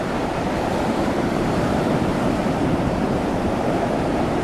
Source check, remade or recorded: remade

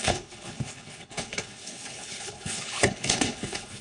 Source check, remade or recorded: remade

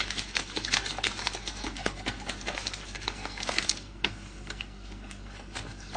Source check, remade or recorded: remade